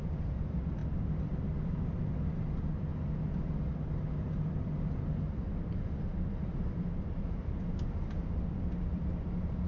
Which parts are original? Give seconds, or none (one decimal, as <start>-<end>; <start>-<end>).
2.9-4.9; 5.4-6.4